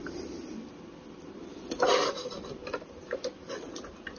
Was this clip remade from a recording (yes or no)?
no